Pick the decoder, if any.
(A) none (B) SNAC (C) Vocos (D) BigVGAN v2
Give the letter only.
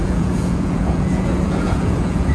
C